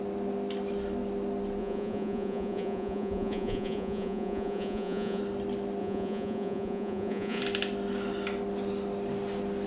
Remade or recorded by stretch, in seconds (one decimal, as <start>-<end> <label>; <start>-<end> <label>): 0.0-1.6 recorded; 1.6-5.2 remade; 5.2-5.8 recorded; 5.8-7.4 remade; 7.4-9.7 recorded